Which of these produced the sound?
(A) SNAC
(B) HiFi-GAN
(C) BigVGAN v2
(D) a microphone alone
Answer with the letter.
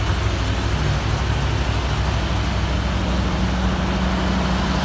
D